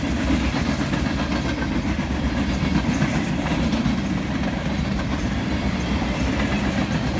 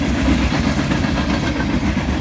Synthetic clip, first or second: second